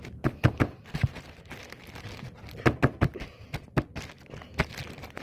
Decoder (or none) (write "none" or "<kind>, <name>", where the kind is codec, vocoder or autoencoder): none